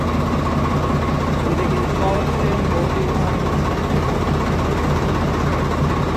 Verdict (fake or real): real